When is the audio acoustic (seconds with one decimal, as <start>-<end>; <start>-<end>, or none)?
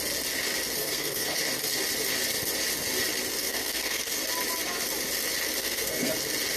0.0-0.8; 1.4-3.4; 4.2-5.6; 6.1-6.6